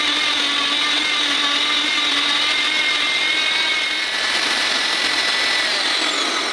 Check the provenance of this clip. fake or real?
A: real